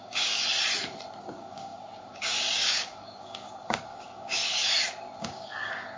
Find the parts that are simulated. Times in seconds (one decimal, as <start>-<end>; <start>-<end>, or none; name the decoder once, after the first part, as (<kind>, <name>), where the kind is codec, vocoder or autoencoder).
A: 0.0-0.4 (codec, DAC); 1.2-4.4; 5.2-6.0